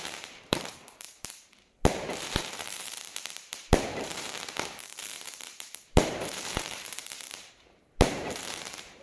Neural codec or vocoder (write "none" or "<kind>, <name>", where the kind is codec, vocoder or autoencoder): vocoder, BigVGAN v2